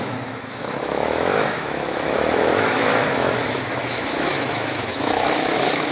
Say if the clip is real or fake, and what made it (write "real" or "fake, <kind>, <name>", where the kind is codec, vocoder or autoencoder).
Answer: fake, autoencoder, DAC-VAE